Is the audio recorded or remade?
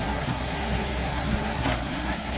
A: remade